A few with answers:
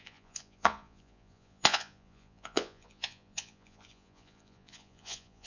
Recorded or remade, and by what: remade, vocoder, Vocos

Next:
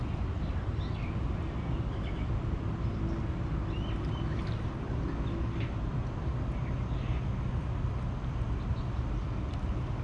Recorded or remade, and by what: recorded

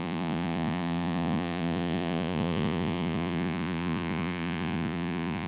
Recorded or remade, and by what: remade, vocoder, Vocos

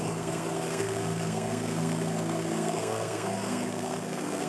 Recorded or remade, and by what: remade, codec, SNAC